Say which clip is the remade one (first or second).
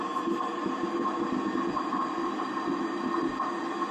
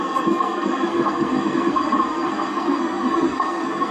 second